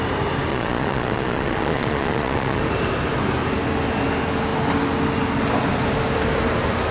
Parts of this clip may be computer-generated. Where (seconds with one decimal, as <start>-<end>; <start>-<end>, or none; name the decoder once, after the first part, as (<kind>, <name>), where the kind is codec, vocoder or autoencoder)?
0.5-2.6 (vocoder, Vocos)